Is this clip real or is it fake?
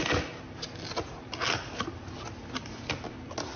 real